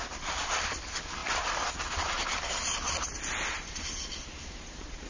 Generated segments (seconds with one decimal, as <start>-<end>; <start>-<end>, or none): none